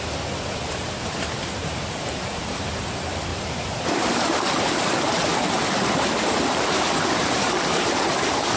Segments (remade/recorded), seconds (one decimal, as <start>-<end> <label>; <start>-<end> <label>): 0.0-0.6 recorded; 0.6-2.8 remade; 2.8-3.3 recorded; 3.3-8.6 remade